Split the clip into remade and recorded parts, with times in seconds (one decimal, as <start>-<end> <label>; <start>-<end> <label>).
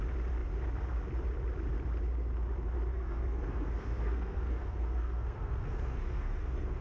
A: 0.0-2.9 recorded; 2.9-6.8 remade